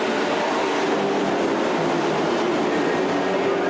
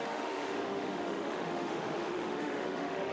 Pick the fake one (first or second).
second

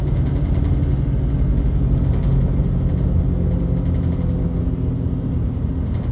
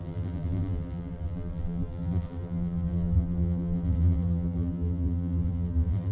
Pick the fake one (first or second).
second